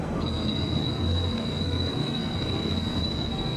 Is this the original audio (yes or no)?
no